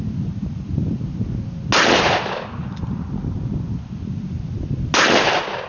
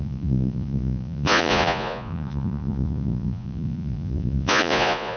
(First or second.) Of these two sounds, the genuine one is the first